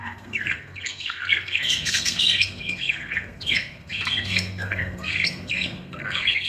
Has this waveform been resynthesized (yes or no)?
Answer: yes